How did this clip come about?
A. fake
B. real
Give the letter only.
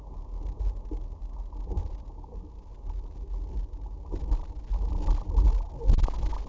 B